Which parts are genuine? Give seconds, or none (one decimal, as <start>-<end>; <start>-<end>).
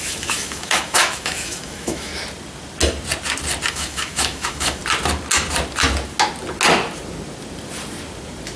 2.1-3.7; 4.8-8.6